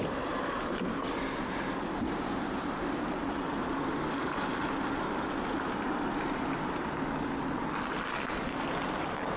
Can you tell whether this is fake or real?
real